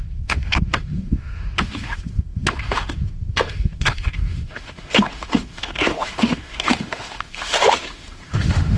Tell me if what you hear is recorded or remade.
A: remade